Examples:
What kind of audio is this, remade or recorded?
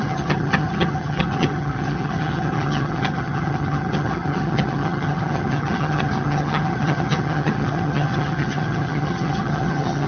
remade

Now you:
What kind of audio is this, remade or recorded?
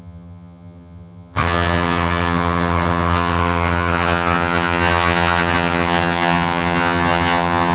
remade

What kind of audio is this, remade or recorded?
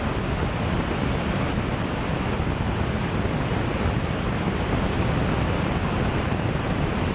recorded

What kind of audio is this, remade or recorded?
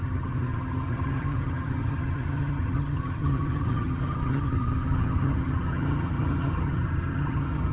remade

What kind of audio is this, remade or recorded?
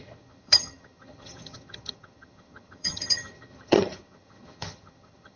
remade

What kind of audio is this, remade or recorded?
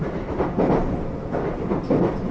recorded